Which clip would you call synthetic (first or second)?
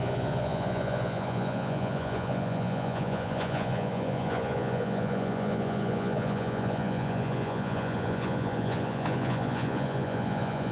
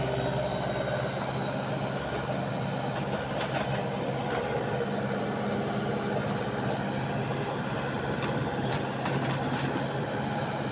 first